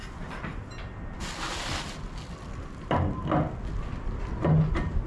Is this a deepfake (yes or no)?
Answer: no